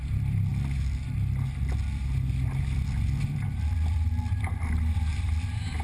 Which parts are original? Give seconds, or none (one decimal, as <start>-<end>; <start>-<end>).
0.5-2.6